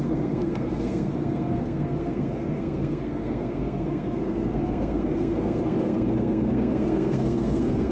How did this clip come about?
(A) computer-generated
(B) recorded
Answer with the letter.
A